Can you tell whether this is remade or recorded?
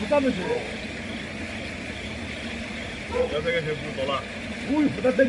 recorded